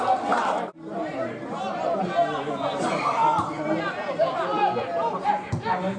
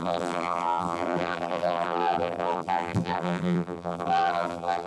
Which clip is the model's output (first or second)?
second